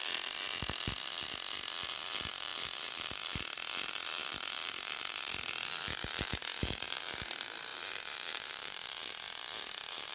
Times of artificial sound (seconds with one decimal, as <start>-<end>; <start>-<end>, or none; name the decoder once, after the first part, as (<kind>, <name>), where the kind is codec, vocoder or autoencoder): 1.9-10.1 (vocoder, BigVGAN v2)